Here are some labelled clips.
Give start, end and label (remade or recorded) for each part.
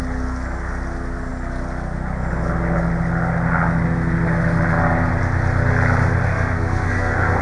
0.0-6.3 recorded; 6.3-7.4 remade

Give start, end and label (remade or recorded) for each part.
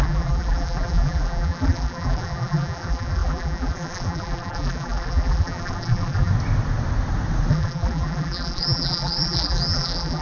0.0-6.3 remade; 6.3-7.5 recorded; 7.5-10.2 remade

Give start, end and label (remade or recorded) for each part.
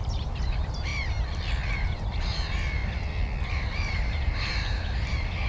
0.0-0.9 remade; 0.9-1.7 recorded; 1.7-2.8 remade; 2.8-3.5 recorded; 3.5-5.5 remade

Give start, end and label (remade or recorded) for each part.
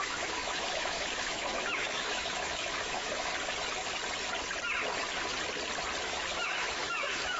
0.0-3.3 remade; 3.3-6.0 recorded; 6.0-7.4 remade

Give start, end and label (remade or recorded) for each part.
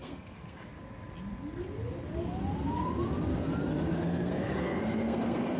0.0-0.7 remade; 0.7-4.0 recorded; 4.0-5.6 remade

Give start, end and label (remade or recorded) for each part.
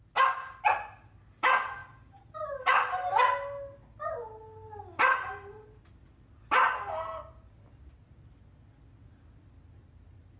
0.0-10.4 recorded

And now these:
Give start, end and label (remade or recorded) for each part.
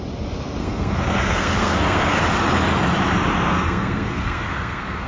0.0-0.6 recorded; 0.6-2.2 remade; 2.2-3.5 recorded; 3.5-5.1 remade